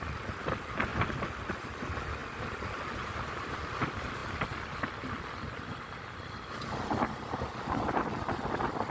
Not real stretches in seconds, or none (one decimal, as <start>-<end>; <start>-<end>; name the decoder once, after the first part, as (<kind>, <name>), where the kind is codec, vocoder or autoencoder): none